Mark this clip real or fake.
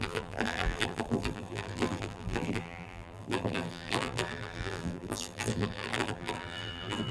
fake